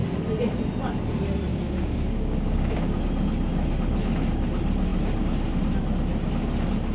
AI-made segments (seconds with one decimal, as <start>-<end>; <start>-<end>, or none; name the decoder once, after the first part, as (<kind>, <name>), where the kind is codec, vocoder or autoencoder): 1.5-3.0 (codec, DAC)